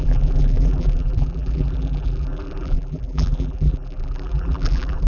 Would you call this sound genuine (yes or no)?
no